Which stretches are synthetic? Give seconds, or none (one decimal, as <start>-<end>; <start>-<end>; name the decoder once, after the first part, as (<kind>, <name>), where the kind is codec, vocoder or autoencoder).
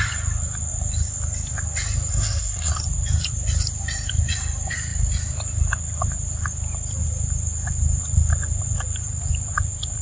2.1-2.7 (codec, SNAC)